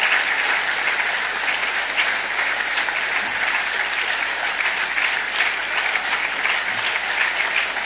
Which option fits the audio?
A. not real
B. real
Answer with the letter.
A